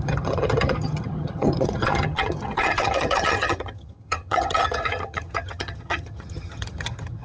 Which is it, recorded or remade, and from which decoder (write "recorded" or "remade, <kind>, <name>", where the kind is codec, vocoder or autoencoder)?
remade, vocoder, HiFi-GAN